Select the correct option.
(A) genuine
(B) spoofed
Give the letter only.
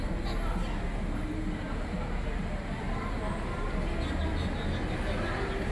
A